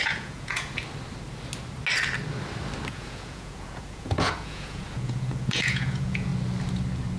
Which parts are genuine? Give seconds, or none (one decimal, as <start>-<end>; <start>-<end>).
0.8-2.9; 6.3-7.2